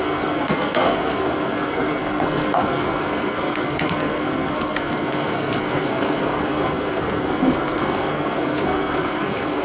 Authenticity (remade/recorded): remade